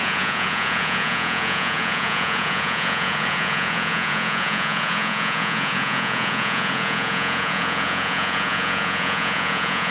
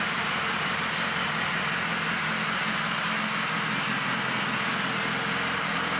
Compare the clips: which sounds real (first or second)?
second